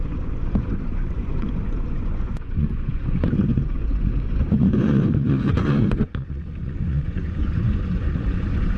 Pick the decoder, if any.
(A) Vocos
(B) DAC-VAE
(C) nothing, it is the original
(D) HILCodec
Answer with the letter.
A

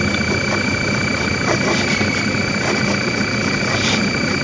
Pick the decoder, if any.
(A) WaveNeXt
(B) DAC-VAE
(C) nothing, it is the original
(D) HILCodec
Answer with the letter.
C